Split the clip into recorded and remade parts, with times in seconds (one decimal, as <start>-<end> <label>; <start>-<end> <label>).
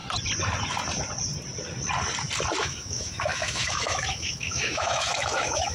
0.0-2.6 recorded; 2.6-5.7 remade